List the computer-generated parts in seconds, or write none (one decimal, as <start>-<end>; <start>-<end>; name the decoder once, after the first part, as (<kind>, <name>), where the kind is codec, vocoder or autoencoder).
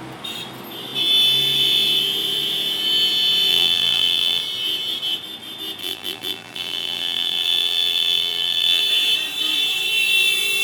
3.5-4.4 (vocoder, BigVGAN v2); 5.8-8.8